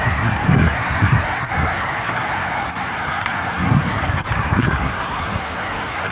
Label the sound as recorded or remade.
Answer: remade